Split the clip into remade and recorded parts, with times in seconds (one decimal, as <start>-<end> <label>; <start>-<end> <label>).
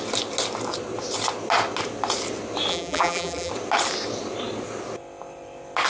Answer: 0.0-2.7 recorded; 2.7-3.5 remade; 3.5-5.9 recorded